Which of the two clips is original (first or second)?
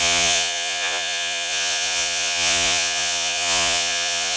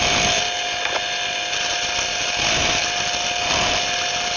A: second